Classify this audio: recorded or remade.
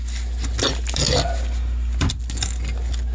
recorded